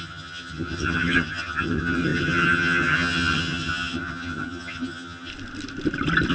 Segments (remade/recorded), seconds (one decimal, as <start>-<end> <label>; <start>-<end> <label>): 0.0-5.3 remade; 5.3-6.3 recorded

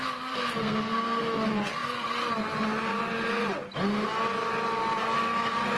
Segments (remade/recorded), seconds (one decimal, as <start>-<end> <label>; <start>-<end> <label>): 0.0-0.6 recorded; 0.6-1.2 remade; 1.2-5.8 recorded

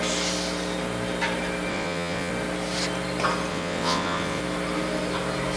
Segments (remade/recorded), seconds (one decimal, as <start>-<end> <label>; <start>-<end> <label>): 0.0-1.7 recorded; 1.7-2.3 remade; 2.3-3.5 recorded; 3.5-4.4 remade; 4.4-5.6 recorded